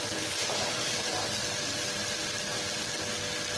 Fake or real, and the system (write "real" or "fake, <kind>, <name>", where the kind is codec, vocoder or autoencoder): real